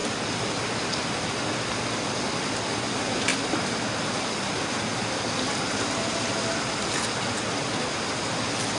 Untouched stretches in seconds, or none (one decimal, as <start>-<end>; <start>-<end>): 0.0-8.8